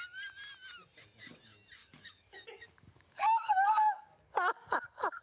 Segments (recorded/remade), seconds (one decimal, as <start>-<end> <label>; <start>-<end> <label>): 0.0-1.8 recorded; 1.8-5.2 remade